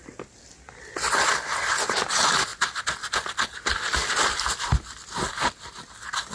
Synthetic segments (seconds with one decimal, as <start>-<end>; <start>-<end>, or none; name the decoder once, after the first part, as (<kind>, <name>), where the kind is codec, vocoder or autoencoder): 0.0-2.5 (vocoder, BigVGAN v2); 5.6-6.3